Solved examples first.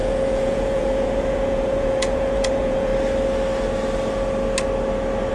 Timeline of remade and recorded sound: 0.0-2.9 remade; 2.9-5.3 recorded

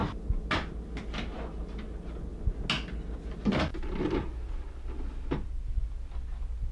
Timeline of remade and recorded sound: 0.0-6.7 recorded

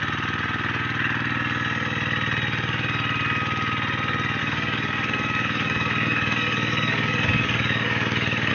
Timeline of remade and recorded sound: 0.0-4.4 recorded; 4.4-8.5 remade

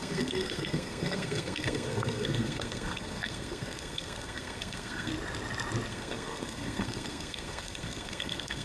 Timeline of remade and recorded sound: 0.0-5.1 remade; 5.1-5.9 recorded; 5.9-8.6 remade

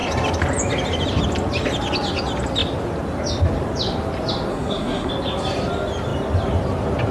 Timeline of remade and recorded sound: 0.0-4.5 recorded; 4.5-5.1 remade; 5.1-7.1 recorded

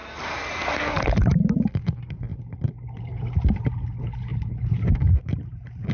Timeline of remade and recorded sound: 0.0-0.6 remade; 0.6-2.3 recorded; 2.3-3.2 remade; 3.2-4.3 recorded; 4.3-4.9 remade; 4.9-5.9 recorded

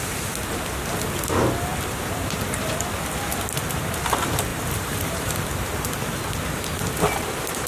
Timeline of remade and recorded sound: 0.0-4.5 recorded; 4.5-6.2 remade; 6.2-7.7 recorded

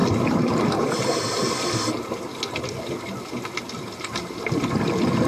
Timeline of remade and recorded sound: 0.0-0.9 remade; 0.9-5.3 recorded